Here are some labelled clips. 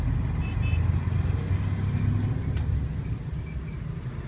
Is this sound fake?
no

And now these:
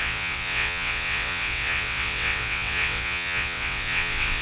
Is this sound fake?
yes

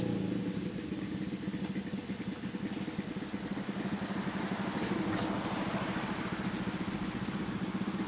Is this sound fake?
no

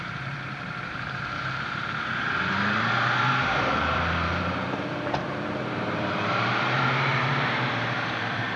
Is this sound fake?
yes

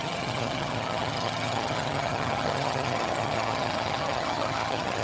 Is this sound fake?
yes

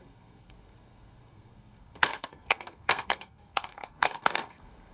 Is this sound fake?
yes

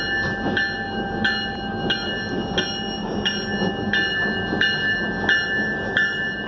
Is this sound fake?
no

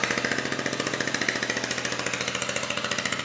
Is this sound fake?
no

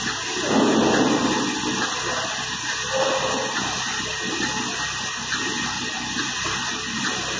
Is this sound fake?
no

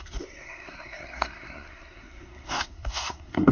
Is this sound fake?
yes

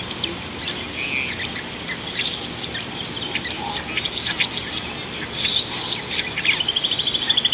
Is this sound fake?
no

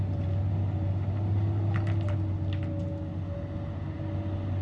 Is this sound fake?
no